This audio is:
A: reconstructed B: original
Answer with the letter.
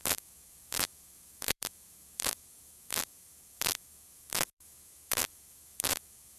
A